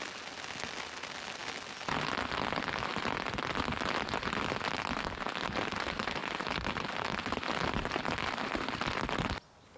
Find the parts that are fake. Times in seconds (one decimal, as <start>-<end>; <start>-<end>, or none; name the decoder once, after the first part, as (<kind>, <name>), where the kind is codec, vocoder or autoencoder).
none